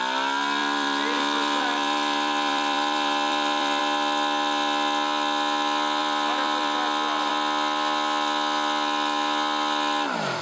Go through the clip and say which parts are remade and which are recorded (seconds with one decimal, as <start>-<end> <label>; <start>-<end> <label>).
0.0-0.6 recorded; 0.6-3.8 remade; 3.8-6.0 recorded; 6.0-7.3 remade; 7.3-10.4 recorded